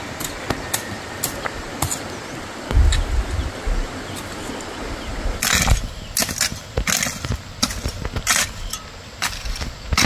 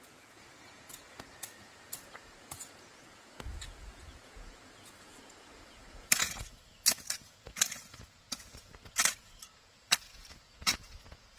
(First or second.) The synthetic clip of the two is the second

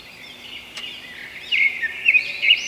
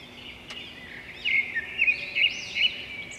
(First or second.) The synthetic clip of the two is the first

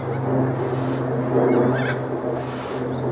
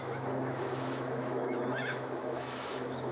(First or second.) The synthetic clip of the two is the second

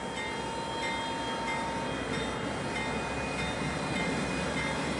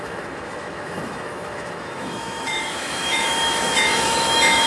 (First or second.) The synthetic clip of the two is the second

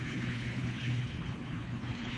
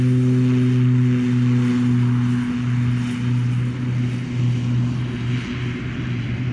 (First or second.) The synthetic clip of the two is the first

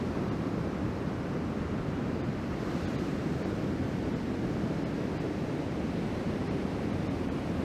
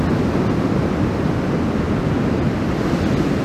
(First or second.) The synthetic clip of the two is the first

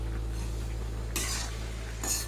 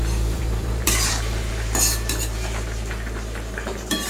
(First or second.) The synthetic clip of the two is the second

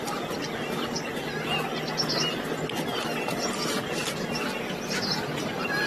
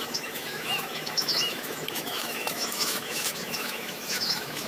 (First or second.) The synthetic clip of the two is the second